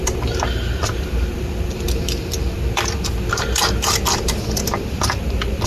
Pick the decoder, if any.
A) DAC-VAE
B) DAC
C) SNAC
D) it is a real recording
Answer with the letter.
D